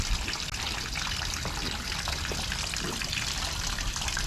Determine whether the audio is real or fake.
real